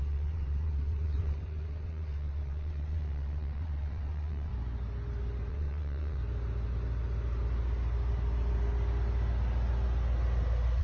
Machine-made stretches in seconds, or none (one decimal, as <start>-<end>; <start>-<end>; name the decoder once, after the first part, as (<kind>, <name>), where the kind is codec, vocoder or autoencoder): 0.0-4.5 (vocoder, WaveNeXt); 5.5-6.2